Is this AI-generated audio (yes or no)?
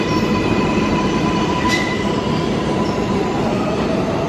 yes